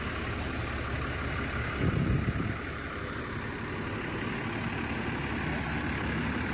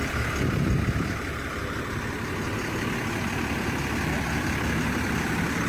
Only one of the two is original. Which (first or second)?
first